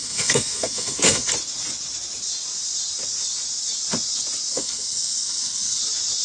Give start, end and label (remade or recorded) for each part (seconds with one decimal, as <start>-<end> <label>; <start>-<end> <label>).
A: 0.0-1.3 remade; 1.3-4.5 recorded; 4.5-5.8 remade; 5.8-6.2 recorded